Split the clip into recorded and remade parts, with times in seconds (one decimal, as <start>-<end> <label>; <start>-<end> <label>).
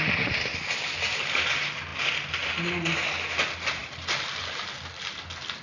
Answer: 0.0-5.6 recorded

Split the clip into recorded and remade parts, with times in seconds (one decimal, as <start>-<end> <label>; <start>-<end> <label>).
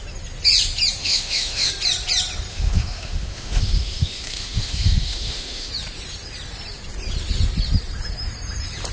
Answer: 0.0-1.0 recorded; 1.0-1.7 remade; 1.7-2.5 recorded; 2.5-5.7 remade; 5.7-8.9 recorded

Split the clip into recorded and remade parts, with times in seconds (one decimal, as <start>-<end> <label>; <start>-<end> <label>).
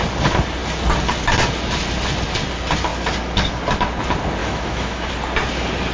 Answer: 0.0-4.4 recorded; 4.4-5.1 remade; 5.1-5.9 recorded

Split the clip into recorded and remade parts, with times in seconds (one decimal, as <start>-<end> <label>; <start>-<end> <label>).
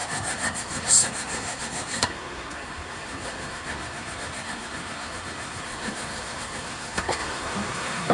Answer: 0.0-8.1 remade